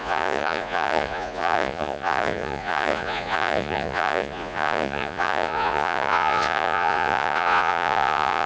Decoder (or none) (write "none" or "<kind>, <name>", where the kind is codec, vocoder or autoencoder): vocoder, Vocos